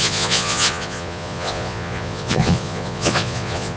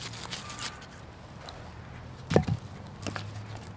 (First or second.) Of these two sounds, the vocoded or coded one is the first